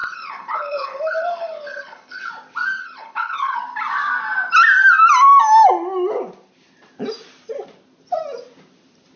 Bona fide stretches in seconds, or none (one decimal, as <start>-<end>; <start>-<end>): 2.3-2.8; 3.6-9.2

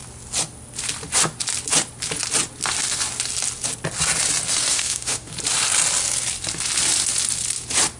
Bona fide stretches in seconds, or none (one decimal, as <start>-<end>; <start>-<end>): 0.0-4.7; 5.3-8.0